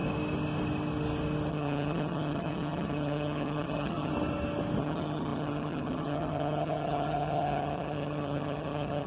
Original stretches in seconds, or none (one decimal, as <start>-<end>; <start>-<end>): 0.0-1.5; 4.1-4.8